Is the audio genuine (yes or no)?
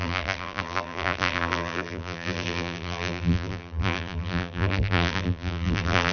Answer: no